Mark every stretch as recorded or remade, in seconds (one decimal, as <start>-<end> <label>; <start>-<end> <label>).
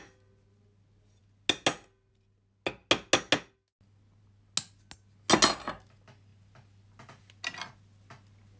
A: 0.0-8.6 recorded